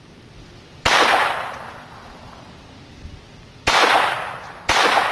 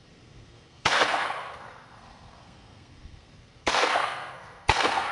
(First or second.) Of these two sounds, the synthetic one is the second